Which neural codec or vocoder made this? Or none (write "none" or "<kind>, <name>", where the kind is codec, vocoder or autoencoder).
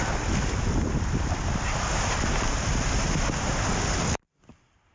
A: none